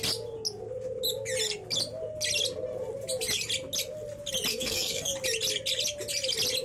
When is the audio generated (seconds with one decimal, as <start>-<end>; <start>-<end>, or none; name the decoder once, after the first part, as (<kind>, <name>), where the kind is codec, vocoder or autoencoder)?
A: 4.5-5.1 (codec, SNAC)